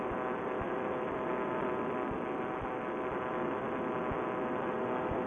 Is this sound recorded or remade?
recorded